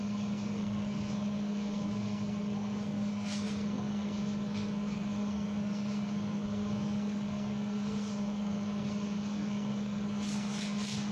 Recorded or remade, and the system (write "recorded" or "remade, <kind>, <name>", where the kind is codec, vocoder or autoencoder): remade, codec, SNAC